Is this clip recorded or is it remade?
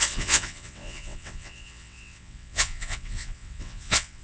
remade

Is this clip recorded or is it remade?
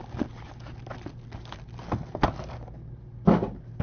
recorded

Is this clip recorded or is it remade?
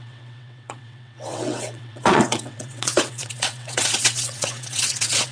remade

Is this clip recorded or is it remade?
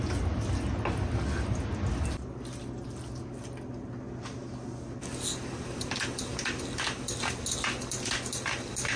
recorded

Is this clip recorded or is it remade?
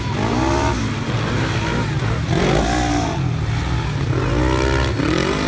recorded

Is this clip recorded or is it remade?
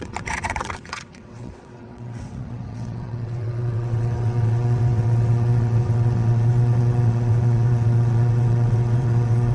remade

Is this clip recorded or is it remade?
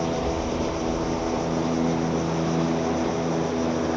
recorded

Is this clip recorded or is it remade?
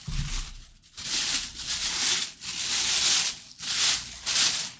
recorded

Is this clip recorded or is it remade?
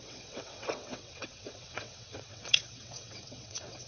remade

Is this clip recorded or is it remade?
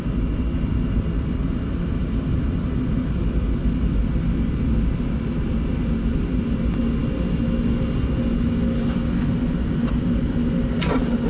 recorded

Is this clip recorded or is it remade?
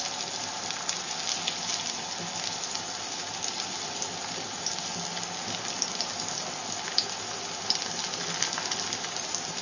recorded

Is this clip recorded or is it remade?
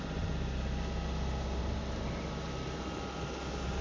recorded